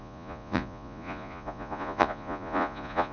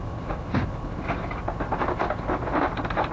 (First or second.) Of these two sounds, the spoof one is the first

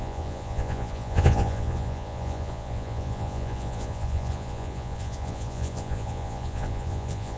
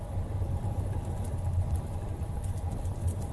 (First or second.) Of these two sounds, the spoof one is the first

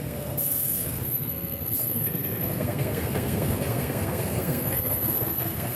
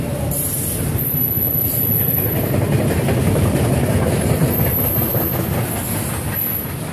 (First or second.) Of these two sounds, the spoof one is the first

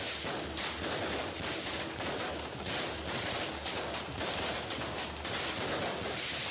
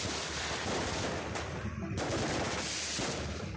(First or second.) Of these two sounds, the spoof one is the second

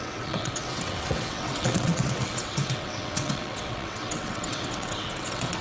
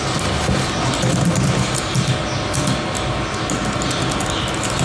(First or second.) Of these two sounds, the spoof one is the first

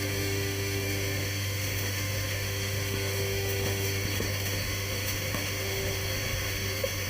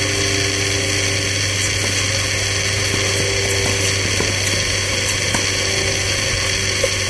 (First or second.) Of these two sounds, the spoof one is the first